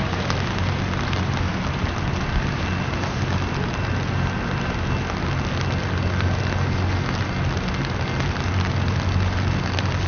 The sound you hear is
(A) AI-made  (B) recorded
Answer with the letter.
B